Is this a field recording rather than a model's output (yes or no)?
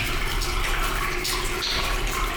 yes